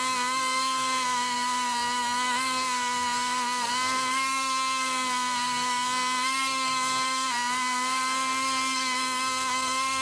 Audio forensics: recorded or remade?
remade